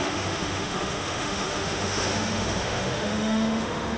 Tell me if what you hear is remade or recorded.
remade